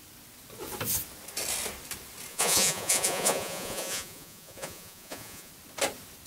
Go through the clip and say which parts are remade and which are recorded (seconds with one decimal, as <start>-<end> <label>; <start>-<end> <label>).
0.0-2.3 recorded; 2.3-5.5 remade; 5.5-6.3 recorded